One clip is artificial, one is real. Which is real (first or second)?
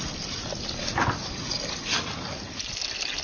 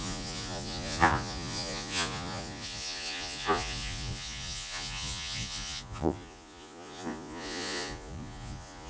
first